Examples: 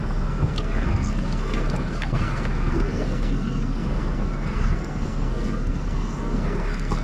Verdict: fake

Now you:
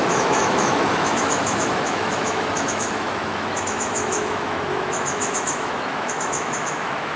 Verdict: fake